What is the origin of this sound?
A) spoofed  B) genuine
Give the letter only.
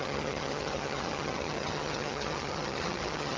A